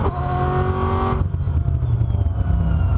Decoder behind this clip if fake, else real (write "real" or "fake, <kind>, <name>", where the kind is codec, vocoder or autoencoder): real